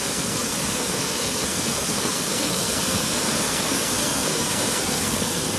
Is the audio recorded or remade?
remade